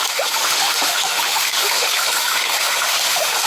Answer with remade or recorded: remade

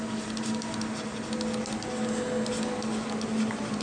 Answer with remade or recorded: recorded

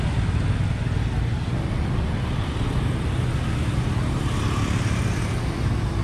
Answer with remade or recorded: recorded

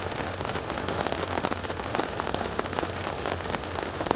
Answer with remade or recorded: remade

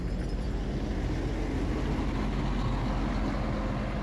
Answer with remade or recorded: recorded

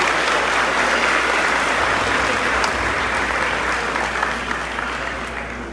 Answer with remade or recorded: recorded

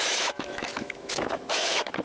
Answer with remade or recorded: remade